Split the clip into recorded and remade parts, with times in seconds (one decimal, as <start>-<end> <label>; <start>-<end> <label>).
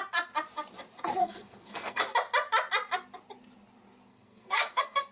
0.0-1.2 recorded; 1.2-2.0 remade; 2.0-4.1 recorded; 4.1-5.1 remade